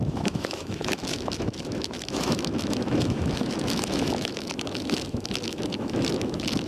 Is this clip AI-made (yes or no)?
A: yes